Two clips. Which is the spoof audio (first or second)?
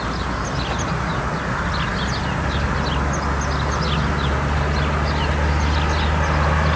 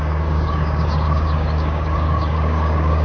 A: second